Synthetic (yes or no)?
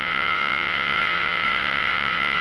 yes